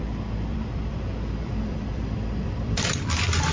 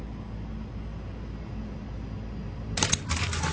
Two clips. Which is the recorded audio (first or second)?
second